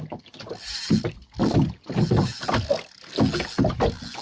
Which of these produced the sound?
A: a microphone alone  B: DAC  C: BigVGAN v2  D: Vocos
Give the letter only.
A